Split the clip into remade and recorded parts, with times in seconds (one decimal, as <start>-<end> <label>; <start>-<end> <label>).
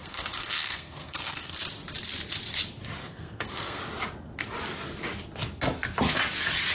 0.0-1.6 remade; 1.6-3.0 recorded; 3.0-3.8 remade; 3.8-6.7 recorded